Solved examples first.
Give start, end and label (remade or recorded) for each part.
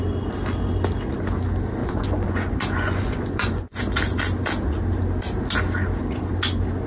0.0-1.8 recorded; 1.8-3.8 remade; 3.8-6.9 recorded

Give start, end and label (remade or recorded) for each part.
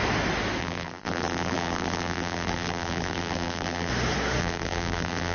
0.0-0.6 recorded; 0.6-3.9 remade; 3.9-4.4 recorded; 4.4-5.3 remade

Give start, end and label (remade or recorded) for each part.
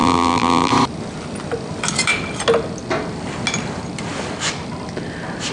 0.0-0.7 remade; 0.7-5.5 recorded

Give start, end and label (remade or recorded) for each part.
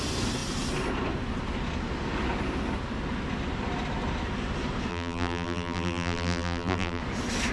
0.0-4.9 recorded; 4.9-7.0 remade; 7.0-7.5 recorded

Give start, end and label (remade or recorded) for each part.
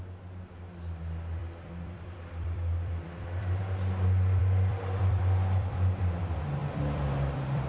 0.0-1.4 recorded; 1.4-3.6 remade; 3.6-4.4 recorded; 4.4-6.0 remade; 6.0-6.6 recorded; 6.6-7.7 remade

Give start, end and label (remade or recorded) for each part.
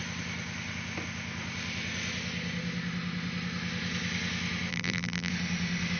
0.0-4.7 recorded; 4.7-5.3 remade; 5.3-6.0 recorded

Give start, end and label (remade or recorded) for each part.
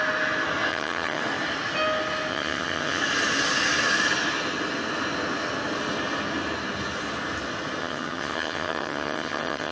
0.0-0.7 recorded; 0.7-1.2 remade; 1.2-2.3 recorded; 2.3-3.0 remade; 3.0-7.8 recorded; 7.8-9.7 remade